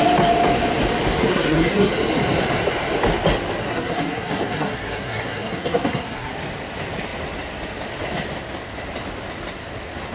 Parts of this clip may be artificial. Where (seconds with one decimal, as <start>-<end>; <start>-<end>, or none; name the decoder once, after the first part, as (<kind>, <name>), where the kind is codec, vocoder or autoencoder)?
1.3-1.9 (codec, SNAC); 3.6-6.3